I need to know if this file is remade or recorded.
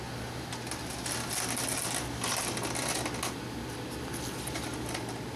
recorded